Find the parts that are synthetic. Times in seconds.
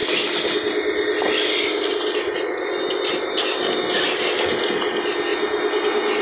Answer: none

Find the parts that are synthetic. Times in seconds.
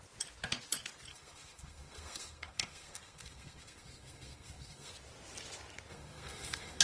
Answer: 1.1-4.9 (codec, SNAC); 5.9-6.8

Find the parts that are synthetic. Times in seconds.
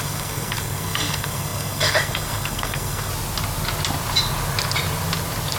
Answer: 0.0-3.1 (codec, SNAC)